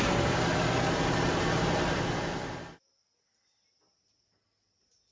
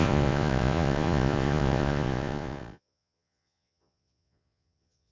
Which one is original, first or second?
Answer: first